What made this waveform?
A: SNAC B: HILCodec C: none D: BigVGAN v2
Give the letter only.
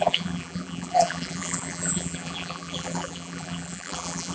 D